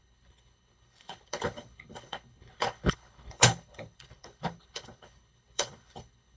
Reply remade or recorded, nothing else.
remade